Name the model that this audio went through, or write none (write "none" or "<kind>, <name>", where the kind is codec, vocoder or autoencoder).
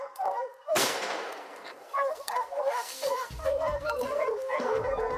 codec, SNAC